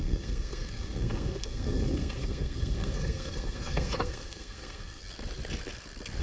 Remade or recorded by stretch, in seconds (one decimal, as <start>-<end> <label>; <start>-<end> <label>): 0.0-5.0 remade; 5.0-6.2 recorded